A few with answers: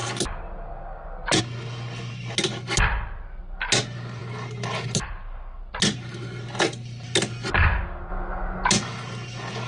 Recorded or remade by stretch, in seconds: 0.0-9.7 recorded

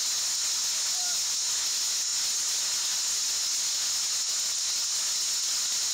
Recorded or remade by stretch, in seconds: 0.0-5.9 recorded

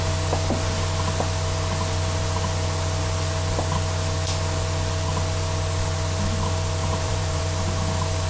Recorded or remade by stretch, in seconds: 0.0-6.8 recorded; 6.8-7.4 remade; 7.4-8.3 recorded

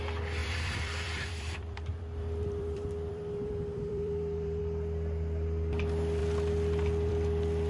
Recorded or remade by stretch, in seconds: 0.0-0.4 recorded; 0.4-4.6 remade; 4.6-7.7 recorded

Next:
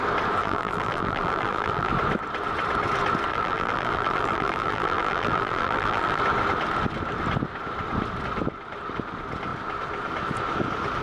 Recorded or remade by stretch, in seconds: 0.0-0.4 recorded; 0.4-1.9 remade; 1.9-3.3 recorded; 3.3-6.2 remade; 6.2-11.0 recorded

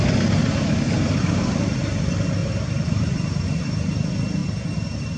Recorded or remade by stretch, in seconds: 0.0-0.4 recorded; 0.4-1.5 remade; 1.5-2.4 recorded; 2.4-3.6 remade; 3.6-5.2 recorded

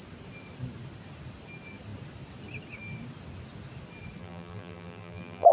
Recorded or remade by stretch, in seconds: 0.0-4.2 recorded; 4.2-5.5 remade

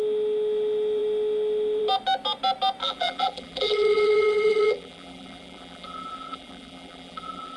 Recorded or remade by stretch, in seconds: 0.0-2.8 recorded; 2.8-7.6 remade